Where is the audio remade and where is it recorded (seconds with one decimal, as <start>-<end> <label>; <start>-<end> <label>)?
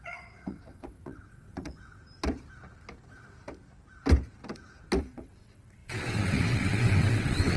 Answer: 0.0-2.0 remade; 2.0-5.0 recorded; 5.0-7.6 remade